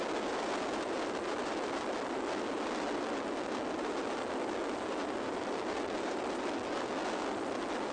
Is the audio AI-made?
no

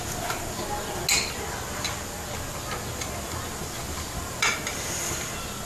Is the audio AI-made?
no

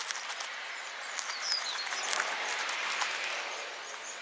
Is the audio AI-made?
no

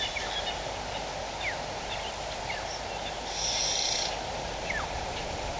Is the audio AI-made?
no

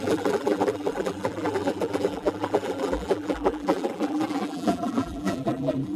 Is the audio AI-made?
yes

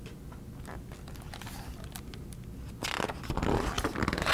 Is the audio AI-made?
no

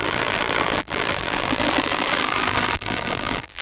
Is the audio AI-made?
yes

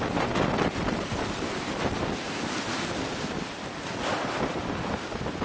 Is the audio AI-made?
yes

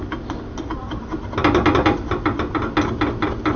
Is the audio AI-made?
no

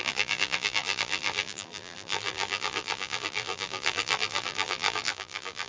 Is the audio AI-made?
yes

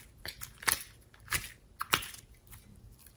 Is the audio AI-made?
no